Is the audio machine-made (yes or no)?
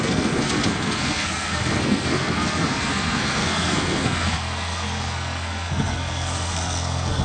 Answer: yes